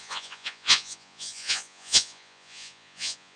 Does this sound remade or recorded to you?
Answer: remade